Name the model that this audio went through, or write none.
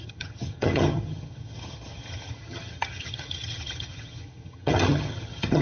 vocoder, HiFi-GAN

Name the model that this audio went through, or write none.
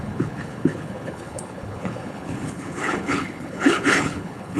codec, HILCodec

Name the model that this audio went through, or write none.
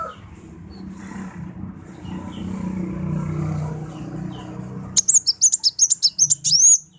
none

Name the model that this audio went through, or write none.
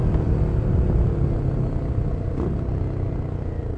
none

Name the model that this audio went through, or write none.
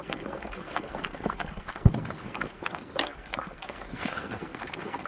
codec, SNAC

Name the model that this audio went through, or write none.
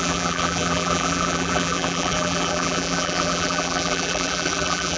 vocoder, BigVGAN v2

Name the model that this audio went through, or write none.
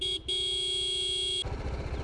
none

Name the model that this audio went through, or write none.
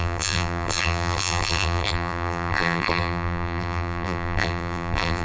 vocoder, BigVGAN v2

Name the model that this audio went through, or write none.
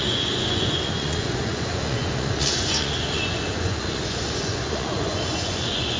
vocoder, Vocos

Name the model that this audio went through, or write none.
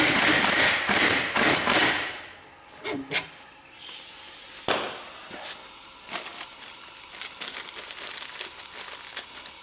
none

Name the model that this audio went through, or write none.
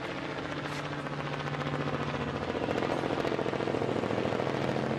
none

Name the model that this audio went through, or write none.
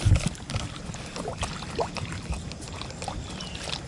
none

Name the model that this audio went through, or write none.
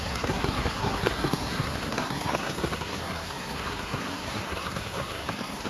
codec, SNAC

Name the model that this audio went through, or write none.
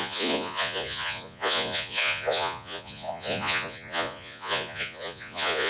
vocoder, Vocos